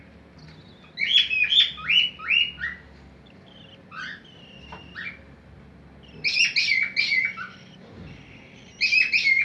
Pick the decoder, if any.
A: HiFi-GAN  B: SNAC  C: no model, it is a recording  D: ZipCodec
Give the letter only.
C